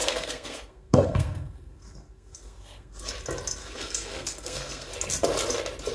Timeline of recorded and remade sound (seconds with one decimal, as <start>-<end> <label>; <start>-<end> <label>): 0.0-3.1 remade; 3.1-3.6 recorded; 3.6-4.9 remade; 4.9-5.9 recorded